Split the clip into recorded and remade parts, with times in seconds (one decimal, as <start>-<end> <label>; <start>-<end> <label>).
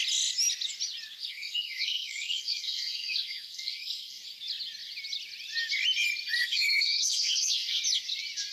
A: 0.0-1.2 recorded; 1.2-4.2 remade; 4.2-6.4 recorded; 6.4-7.8 remade; 7.8-8.5 recorded